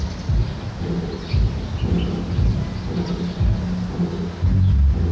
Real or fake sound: real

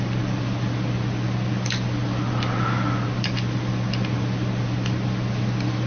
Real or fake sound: real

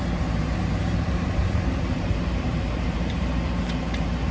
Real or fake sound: fake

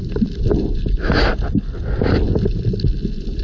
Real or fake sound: real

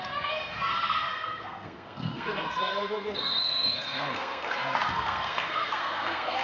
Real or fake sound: fake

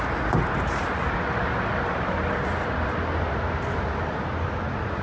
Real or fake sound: real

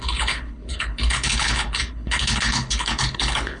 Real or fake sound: fake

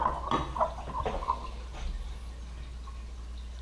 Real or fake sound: real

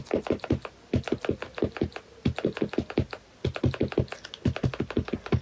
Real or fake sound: real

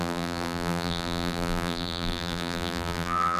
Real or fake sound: fake